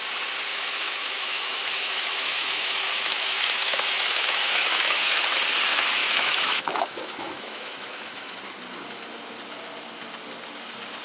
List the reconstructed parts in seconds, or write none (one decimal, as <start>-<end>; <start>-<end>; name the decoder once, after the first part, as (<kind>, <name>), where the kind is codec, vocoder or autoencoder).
0.5-5.2 (autoencoder, DAC-VAE); 6.0-8.3